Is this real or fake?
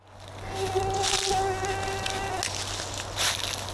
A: real